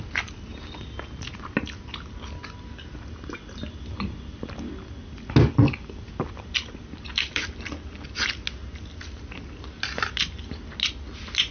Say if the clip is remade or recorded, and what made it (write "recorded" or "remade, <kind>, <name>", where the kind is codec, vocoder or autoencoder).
recorded